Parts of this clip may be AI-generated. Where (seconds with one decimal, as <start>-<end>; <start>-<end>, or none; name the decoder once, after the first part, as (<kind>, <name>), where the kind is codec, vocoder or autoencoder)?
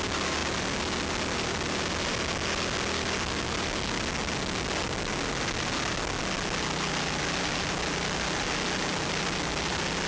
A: none